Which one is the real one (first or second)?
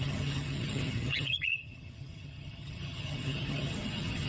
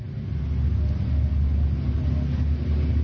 second